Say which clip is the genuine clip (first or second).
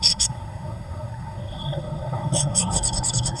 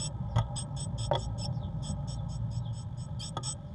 second